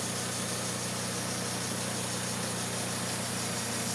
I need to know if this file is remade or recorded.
recorded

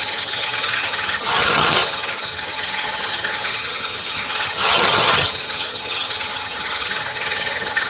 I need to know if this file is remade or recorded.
remade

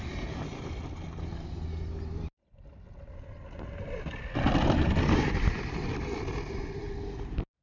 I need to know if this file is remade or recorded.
recorded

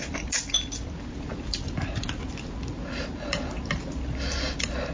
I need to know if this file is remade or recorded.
recorded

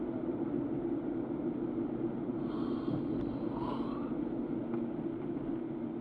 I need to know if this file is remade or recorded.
recorded